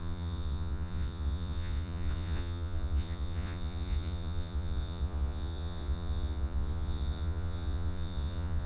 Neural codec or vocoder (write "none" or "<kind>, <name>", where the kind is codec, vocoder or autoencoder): vocoder, Vocos